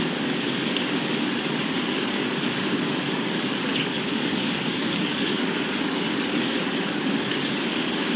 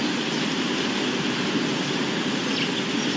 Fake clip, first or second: first